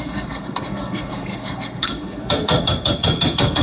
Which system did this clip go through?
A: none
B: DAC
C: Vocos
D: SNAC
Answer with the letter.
D